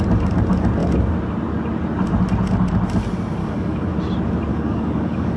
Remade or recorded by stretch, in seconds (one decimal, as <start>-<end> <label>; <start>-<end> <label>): 0.0-3.4 recorded; 3.4-3.9 remade; 3.9-4.5 recorded; 4.5-5.4 remade